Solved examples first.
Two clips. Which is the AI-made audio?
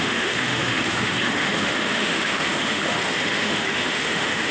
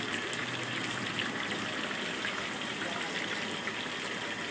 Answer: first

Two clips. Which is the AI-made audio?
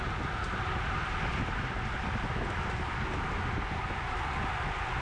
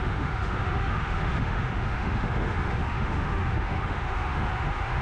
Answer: second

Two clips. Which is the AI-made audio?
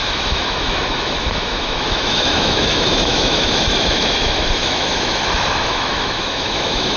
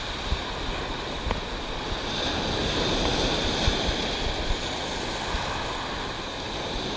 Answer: first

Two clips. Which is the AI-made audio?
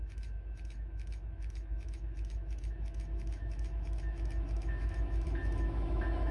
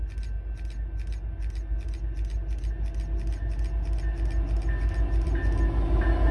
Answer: first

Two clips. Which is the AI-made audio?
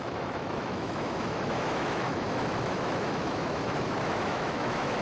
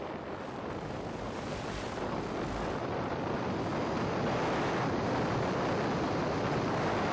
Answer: first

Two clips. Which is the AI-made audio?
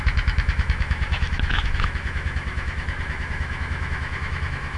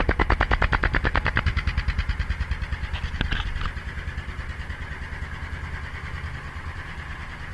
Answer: first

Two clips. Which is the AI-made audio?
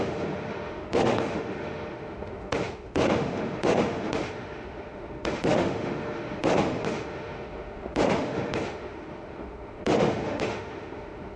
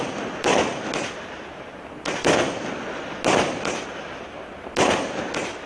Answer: first